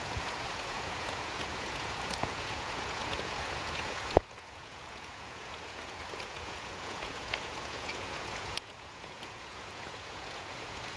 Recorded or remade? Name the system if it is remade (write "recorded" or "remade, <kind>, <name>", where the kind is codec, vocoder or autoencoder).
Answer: remade, vocoder, Vocos